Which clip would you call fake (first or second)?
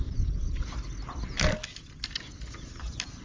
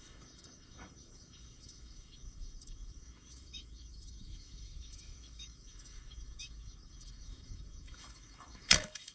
second